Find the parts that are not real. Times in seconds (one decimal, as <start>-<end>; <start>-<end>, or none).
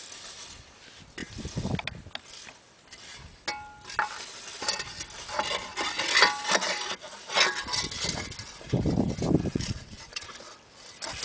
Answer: 9.5-10.3